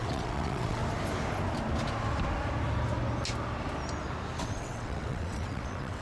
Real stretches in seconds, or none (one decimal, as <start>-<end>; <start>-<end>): 0.8-4.4